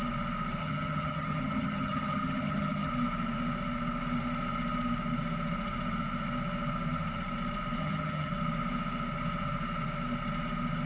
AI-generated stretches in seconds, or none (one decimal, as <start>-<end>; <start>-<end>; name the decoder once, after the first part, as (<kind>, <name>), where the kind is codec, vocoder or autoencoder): 0.6-2.9 (vocoder, HiFi-GAN); 7.8-8.3